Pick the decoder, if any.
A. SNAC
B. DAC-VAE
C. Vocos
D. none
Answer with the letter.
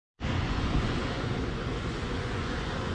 C